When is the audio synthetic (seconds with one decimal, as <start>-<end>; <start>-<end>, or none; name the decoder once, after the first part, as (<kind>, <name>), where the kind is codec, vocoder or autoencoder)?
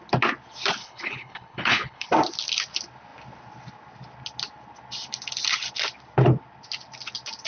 0.8-2.1 (codec, HILCodec)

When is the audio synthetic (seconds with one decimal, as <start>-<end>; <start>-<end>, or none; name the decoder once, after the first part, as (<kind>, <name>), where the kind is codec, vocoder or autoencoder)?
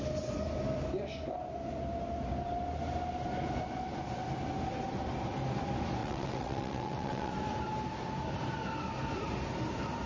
6.0-7.3 (vocoder, WaveNeXt)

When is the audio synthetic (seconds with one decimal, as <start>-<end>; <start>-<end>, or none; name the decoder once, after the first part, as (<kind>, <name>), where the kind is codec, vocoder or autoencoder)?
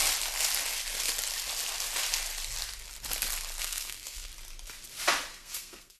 3.6-4.3 (codec, SNAC); 5.3-6.0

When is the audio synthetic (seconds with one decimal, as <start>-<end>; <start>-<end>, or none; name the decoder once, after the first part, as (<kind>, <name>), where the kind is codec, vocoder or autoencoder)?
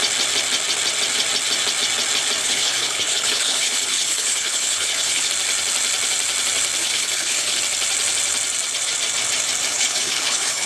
2.4-5.3 (codec, HILCodec); 6.8-7.6; 9.7-10.7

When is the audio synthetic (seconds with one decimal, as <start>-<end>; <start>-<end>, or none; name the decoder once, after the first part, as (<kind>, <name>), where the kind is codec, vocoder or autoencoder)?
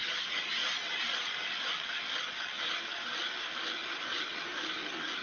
none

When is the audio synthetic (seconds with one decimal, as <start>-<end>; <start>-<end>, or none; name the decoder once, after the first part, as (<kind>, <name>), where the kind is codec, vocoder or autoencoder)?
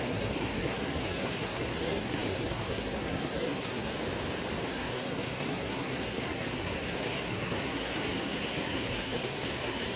0.0-3.9 (codec, SNAC); 4.7-10.0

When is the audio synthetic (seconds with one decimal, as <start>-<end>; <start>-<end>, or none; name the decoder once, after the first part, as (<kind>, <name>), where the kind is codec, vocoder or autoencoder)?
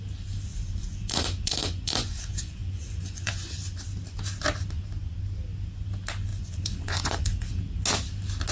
0.5-3.8 (vocoder, Vocos); 6.3-7.6